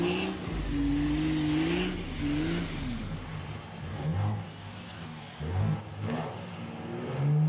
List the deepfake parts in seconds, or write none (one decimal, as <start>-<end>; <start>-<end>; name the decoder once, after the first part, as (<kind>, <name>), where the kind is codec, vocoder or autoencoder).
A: 3.9-5.8 (codec, DAC)